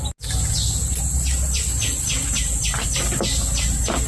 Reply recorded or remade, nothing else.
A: recorded